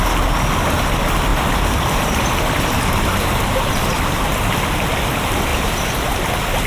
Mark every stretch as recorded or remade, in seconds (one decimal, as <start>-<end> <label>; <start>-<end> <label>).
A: 0.0-1.3 recorded; 1.3-4.0 remade; 4.0-5.5 recorded; 5.5-6.3 remade; 6.3-6.7 recorded